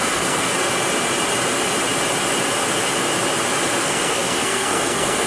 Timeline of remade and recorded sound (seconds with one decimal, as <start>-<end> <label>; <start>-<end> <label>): 0.0-0.6 remade; 0.6-3.8 recorded; 3.8-5.3 remade

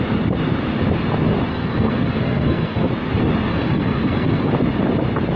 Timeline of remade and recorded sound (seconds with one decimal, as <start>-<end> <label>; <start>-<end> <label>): 0.0-1.5 recorded; 1.5-2.9 remade; 2.9-3.5 recorded; 3.5-4.5 remade; 4.5-5.4 recorded

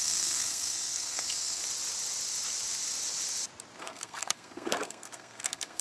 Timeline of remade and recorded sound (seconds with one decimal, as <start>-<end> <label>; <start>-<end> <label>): 0.0-1.6 remade; 1.6-3.8 recorded; 3.8-5.8 remade

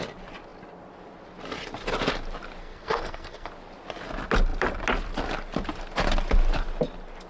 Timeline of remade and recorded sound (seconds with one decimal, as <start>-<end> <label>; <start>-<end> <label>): 0.0-2.6 recorded; 2.6-3.5 remade; 3.5-7.3 recorded